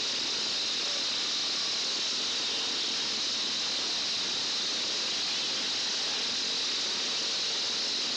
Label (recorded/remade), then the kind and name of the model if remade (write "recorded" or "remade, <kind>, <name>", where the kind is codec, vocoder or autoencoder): recorded